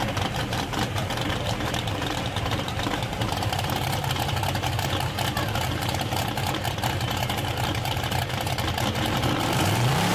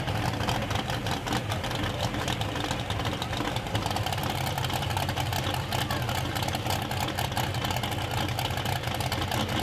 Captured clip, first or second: second